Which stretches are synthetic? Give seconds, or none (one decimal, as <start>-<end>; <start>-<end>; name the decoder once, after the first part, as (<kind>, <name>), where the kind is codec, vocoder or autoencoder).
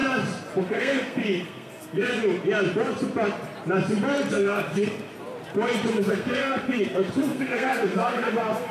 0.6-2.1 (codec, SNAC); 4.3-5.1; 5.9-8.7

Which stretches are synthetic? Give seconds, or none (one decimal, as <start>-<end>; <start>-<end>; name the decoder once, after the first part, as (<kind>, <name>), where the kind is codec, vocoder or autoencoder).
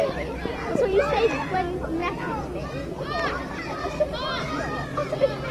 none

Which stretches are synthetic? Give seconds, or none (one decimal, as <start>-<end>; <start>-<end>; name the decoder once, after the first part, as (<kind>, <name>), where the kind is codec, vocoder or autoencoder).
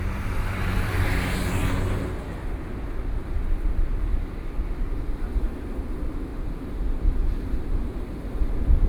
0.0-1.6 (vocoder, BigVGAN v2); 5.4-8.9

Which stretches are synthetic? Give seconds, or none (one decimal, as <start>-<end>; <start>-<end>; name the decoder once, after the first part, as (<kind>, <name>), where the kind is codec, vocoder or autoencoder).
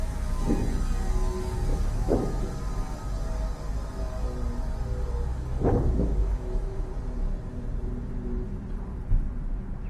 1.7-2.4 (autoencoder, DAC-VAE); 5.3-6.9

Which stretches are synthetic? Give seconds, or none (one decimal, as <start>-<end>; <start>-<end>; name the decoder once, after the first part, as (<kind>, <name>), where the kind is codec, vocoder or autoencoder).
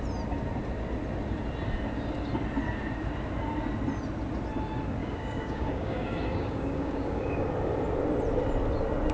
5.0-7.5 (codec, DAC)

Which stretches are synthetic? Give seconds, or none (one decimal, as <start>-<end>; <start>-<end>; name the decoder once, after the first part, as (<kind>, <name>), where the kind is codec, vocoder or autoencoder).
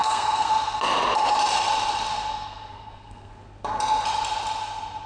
0.0-0.5 (codec, SNAC); 2.3-3.3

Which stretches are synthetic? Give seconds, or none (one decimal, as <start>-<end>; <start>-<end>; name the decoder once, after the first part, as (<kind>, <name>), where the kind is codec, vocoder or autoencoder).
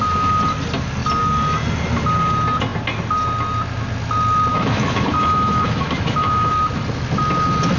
4.5-6.5 (autoencoder, DAC-VAE)